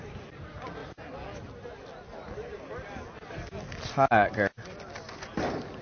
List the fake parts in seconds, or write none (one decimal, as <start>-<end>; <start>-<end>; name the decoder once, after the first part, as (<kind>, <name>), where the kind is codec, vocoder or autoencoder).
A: none